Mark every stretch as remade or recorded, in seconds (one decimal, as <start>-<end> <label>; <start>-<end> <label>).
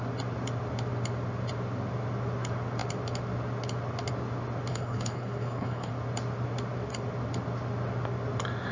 0.0-4.7 recorded; 4.7-5.9 remade; 5.9-8.7 recorded